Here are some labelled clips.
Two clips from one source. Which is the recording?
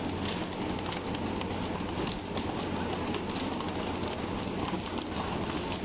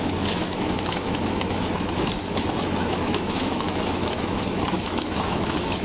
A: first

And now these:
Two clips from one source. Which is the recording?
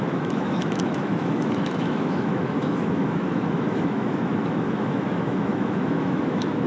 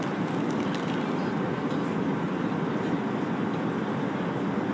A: second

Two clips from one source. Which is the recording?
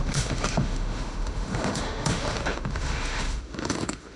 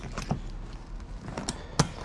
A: second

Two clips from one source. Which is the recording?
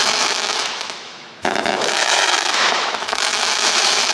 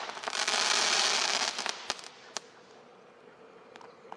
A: second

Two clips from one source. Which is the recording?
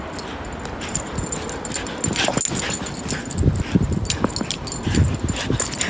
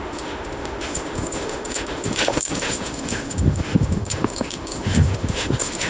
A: first